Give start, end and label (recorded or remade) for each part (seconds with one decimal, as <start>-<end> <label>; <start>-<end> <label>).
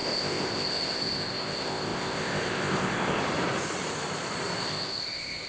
0.0-3.2 remade; 3.2-4.6 recorded; 4.6-5.5 remade